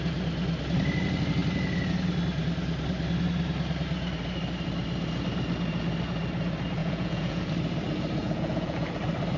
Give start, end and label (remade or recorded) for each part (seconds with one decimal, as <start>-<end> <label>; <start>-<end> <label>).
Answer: 0.0-6.8 recorded; 6.8-7.5 remade; 7.5-8.2 recorded; 8.2-9.0 remade; 9.0-9.4 recorded